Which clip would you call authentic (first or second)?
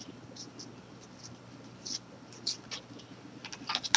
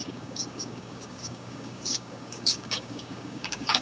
first